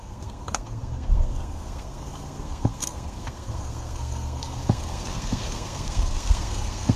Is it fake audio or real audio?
fake